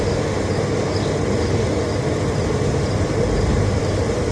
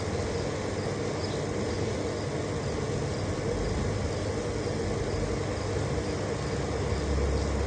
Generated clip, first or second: first